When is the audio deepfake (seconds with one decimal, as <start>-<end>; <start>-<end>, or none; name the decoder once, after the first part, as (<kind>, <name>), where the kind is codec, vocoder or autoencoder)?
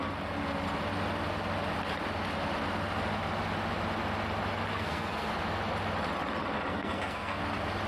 4.7-5.3 (codec, SNAC); 6.7-7.4